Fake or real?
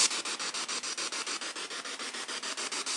real